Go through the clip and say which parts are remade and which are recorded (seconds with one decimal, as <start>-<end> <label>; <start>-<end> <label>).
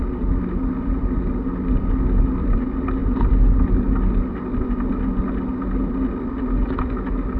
0.0-7.4 recorded